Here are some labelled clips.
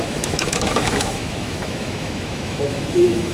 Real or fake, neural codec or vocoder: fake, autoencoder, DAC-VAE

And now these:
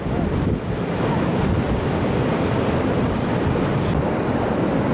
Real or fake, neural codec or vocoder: real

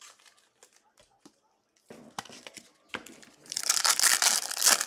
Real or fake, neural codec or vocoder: real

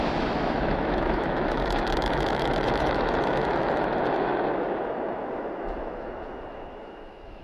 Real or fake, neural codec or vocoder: fake, autoencoder, DAC-VAE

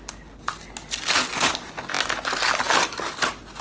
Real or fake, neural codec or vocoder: real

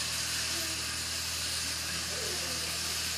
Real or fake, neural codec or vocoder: real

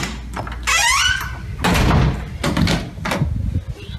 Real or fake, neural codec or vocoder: real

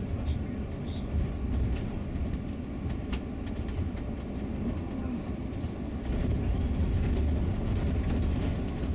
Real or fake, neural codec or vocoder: real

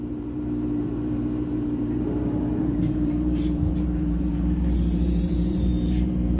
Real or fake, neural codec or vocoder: fake, vocoder, BigVGAN v2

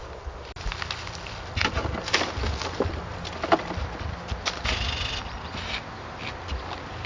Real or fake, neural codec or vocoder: real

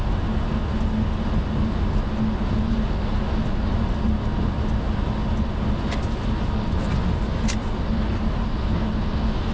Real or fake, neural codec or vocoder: real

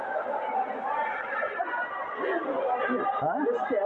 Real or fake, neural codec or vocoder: real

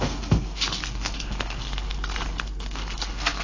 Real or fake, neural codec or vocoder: fake, codec, SNAC